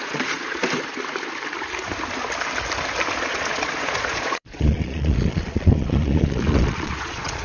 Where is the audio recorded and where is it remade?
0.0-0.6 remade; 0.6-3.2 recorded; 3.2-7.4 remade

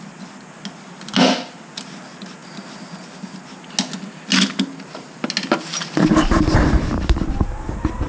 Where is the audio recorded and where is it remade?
0.0-8.1 recorded